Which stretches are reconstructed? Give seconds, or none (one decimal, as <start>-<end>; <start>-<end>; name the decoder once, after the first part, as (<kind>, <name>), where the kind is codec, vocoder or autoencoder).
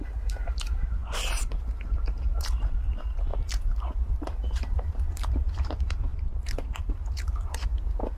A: 0.0-8.2 (vocoder, BigVGAN v2)